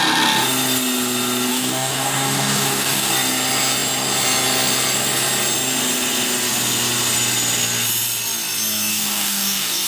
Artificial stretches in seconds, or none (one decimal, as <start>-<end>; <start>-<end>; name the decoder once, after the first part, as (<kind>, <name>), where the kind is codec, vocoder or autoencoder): 1.5-3.1 (codec, DAC); 8.9-9.9